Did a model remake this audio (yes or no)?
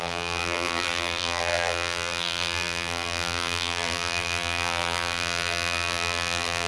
yes